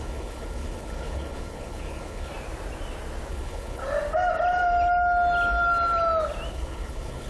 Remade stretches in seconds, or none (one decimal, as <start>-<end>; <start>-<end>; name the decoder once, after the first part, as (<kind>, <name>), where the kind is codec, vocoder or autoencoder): 0.0-2.3 (codec, HILCodec); 3.3-3.8; 6.5-7.3